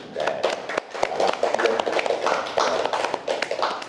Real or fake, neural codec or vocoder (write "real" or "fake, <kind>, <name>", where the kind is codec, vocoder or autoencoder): real